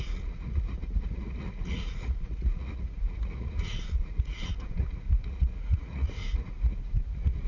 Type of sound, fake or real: fake